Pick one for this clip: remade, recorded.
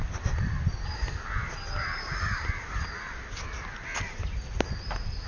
recorded